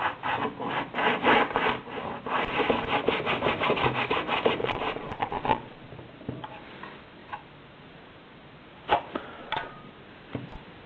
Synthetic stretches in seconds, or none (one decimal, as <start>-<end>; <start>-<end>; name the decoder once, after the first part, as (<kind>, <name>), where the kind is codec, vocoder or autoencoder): 4.6-5.9 (vocoder, Vocos); 9.4-9.9